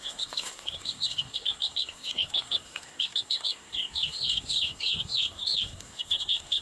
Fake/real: fake